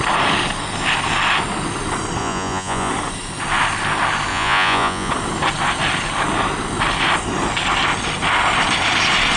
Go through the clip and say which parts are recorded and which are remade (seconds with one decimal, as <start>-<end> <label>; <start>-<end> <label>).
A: 0.0-2.2 recorded; 2.2-2.9 remade; 2.9-4.3 recorded; 4.3-5.1 remade; 5.1-9.4 recorded